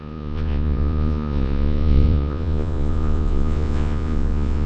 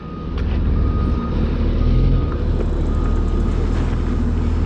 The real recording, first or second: second